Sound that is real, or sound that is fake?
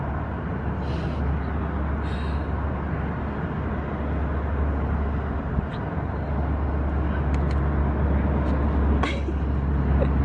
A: real